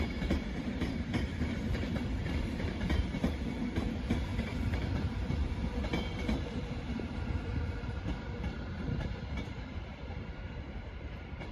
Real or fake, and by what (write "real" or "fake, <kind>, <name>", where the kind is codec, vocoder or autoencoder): fake, vocoder, BigVGAN v2